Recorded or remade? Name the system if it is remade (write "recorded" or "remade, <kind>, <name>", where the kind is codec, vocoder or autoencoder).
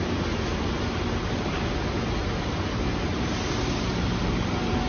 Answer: recorded